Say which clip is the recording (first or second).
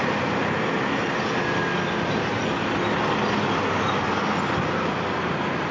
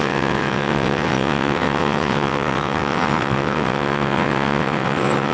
first